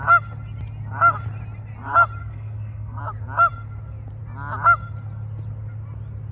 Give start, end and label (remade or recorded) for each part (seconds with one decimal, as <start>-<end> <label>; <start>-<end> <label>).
0.0-2.2 recorded; 2.2-3.0 remade; 3.0-6.3 recorded